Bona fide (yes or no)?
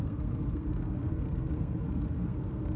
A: no